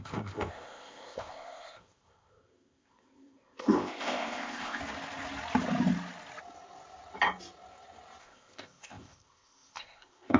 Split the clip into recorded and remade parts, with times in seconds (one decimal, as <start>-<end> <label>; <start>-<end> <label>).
0.0-4.8 remade; 4.8-8.2 recorded; 8.2-10.4 remade